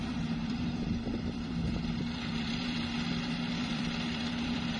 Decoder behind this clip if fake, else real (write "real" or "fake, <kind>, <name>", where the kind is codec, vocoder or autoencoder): fake, vocoder, BigVGAN v2